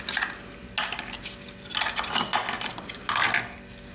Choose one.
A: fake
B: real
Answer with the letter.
B